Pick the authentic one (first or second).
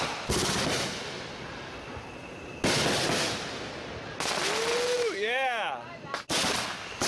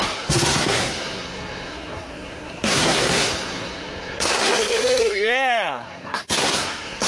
first